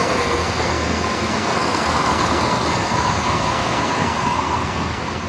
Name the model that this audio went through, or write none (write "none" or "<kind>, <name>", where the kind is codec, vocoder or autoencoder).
codec, SNAC